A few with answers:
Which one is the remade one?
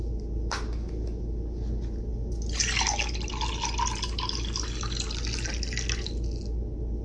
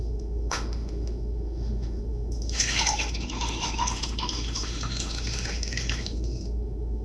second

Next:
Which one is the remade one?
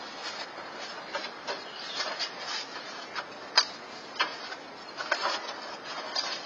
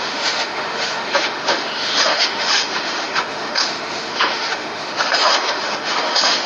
second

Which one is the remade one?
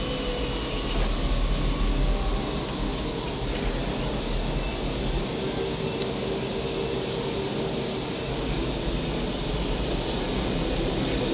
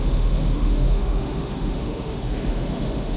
second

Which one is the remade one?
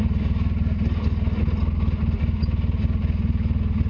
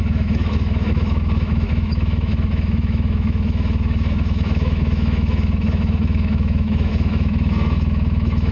second